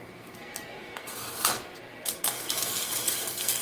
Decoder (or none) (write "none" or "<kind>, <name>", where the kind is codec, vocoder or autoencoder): codec, SNAC